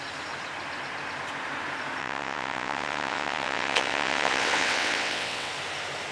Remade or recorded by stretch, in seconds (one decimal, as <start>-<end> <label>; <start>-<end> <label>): 0.0-2.0 recorded; 2.0-5.5 remade; 5.5-6.1 recorded